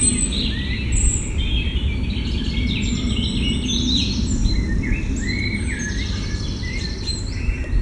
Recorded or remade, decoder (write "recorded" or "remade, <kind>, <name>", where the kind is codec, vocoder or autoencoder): recorded